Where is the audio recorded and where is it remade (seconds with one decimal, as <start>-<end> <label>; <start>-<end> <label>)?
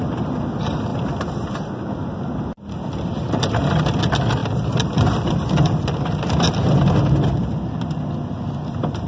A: 0.0-4.4 recorded; 4.4-6.5 remade; 6.5-9.1 recorded